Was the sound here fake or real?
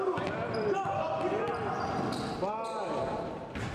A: fake